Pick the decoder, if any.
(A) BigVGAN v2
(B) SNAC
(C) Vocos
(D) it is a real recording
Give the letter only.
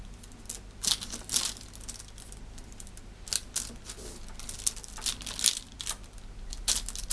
D